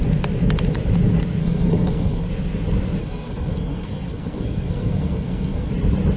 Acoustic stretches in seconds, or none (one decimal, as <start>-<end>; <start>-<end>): 0.0-1.4; 2.3-3.0; 5.7-6.2